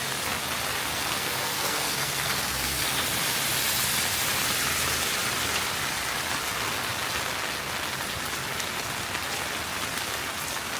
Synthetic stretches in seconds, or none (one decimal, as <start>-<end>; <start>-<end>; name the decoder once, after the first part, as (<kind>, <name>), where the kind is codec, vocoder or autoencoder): 0.9-2.8 (codec, SNAC)